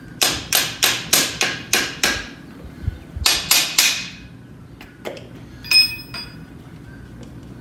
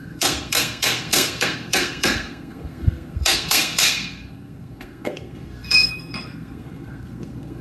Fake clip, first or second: second